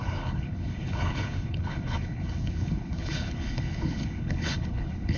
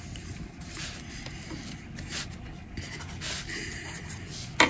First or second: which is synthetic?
first